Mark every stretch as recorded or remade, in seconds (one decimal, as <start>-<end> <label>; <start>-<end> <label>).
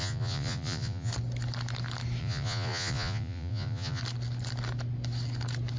0.0-1.1 remade; 1.1-2.2 recorded; 2.2-4.0 remade; 4.0-5.8 recorded